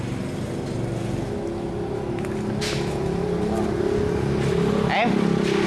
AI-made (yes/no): no